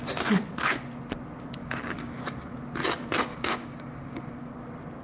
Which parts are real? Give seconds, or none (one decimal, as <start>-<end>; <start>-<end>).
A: 0.0-1.6; 2.2-3.3; 4.5-5.0